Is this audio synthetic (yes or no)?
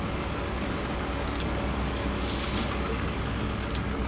yes